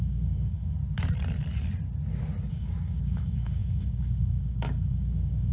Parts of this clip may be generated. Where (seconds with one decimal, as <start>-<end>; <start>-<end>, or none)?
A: 0.0-0.8; 2.5-5.5